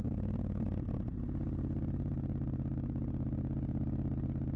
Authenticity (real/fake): real